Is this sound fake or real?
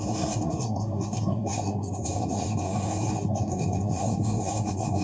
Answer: fake